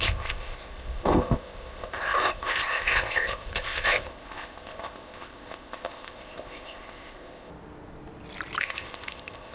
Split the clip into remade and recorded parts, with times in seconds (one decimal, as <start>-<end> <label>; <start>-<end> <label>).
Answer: 0.0-7.5 remade; 7.5-8.6 recorded; 8.6-9.5 remade